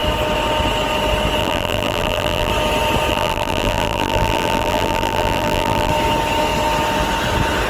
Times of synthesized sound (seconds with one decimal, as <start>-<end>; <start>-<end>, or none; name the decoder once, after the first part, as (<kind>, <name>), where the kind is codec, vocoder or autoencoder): 1.4-2.5 (vocoder, BigVGAN v2); 3.1-5.9